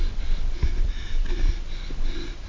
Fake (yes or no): no